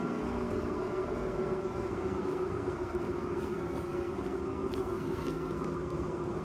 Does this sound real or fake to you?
fake